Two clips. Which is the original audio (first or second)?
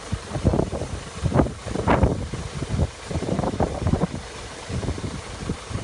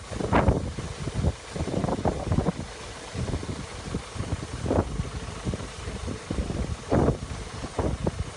second